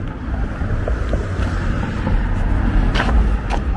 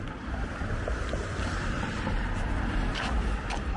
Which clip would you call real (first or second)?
first